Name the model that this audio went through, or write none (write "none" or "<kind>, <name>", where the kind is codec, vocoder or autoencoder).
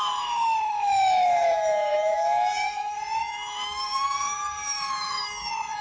autoencoder, DAC-VAE